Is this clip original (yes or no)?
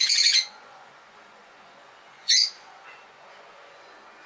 no